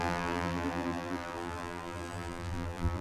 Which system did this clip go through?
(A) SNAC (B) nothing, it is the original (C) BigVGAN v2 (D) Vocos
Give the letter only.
C